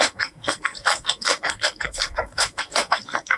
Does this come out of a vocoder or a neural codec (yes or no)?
yes